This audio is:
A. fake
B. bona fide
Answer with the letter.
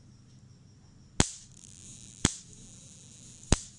B